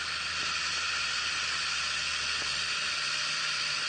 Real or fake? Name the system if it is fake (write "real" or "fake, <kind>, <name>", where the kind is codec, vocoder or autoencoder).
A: real